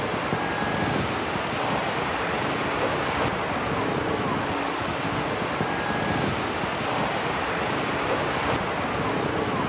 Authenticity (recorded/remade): recorded